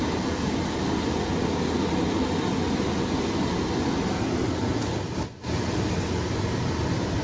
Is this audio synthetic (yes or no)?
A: no